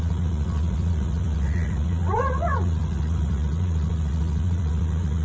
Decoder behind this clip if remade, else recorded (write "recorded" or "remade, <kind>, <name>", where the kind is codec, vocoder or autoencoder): remade, vocoder, Vocos